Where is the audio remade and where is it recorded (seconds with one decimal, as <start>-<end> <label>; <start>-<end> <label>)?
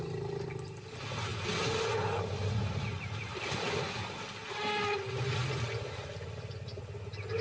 0.0-5.4 recorded; 5.4-6.8 remade; 6.8-7.4 recorded